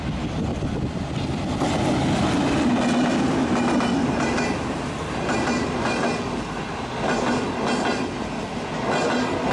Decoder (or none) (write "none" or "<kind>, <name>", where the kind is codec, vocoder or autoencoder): none